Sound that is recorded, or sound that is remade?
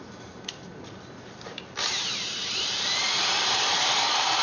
remade